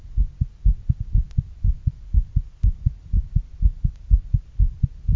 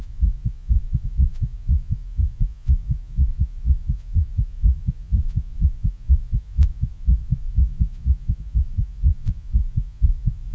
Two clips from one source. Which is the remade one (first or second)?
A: second